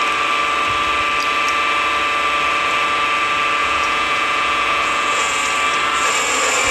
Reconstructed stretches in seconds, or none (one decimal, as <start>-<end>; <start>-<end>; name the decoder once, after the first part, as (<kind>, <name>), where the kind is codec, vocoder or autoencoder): 3.6-5.4 (vocoder, Vocos)